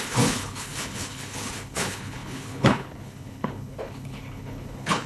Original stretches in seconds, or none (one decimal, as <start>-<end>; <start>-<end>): none